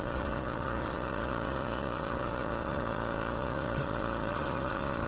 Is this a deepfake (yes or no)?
yes